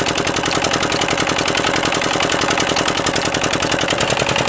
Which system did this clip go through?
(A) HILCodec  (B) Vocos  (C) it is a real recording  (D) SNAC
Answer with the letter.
C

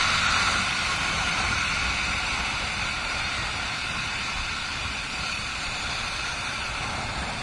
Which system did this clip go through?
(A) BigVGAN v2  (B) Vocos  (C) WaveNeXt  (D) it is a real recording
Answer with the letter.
A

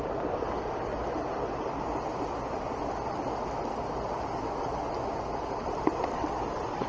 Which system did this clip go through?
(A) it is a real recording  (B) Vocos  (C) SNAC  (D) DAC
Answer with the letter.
A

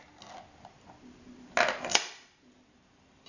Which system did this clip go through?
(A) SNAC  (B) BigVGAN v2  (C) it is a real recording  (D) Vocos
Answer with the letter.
C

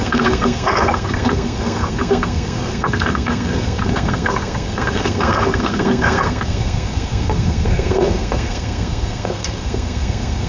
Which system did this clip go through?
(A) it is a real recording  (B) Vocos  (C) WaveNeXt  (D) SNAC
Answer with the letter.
D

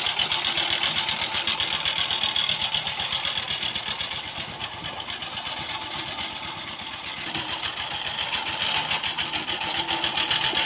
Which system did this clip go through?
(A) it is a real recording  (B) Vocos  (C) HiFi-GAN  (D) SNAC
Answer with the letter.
A